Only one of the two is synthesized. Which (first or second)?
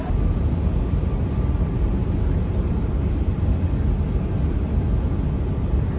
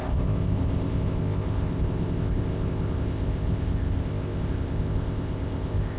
second